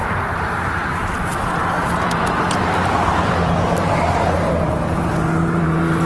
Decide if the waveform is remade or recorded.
remade